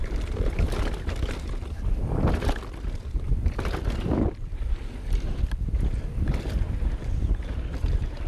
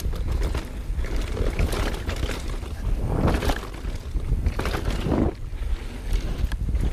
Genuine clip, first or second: second